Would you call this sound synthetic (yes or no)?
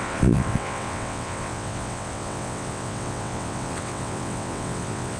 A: yes